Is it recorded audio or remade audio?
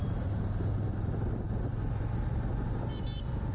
recorded